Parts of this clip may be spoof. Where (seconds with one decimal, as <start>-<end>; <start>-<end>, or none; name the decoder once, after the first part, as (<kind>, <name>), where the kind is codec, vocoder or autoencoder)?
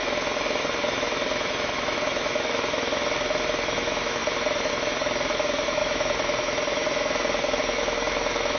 0.0-8.6 (autoencoder, DAC-VAE)